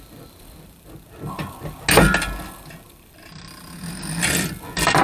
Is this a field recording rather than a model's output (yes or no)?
yes